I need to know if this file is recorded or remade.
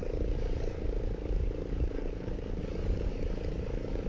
remade